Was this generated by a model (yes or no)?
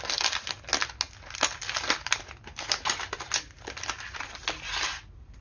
no